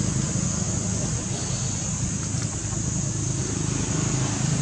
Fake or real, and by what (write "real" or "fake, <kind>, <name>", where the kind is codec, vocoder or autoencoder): real